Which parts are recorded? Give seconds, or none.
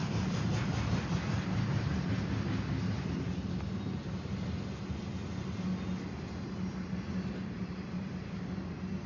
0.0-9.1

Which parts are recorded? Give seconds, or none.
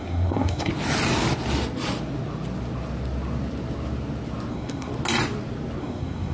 0.7-4.5; 4.9-5.8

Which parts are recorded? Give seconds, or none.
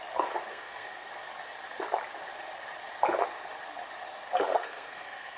0.0-0.5; 1.1-4.5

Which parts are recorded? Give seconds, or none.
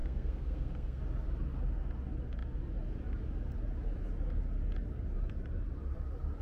1.0-6.4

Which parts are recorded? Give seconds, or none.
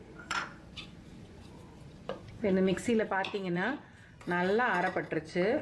3.9-5.6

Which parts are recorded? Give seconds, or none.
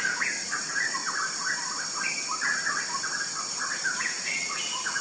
1.0-4.0